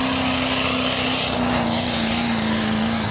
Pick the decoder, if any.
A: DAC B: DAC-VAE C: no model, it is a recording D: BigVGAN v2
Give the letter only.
C